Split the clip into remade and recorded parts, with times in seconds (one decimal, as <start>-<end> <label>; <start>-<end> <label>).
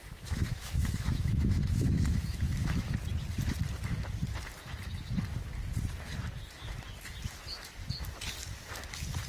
0.0-2.9 remade; 2.9-9.3 recorded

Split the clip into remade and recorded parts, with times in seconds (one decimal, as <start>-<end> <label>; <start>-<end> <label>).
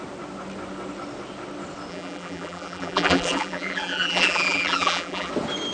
0.0-1.9 recorded; 1.9-5.3 remade; 5.3-5.7 recorded